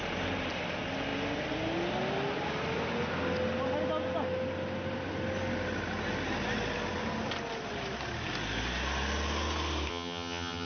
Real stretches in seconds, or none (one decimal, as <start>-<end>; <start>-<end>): 0.0-9.9